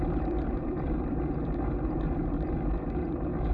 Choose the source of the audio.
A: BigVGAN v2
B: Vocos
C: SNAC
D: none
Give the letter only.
A